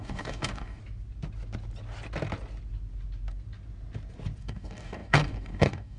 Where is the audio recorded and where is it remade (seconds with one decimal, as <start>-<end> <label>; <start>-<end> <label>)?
0.0-0.8 remade; 0.8-4.4 recorded; 4.4-6.0 remade